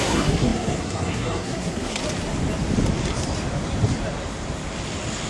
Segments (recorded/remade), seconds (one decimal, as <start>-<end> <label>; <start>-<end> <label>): 0.0-2.0 remade; 2.0-5.3 recorded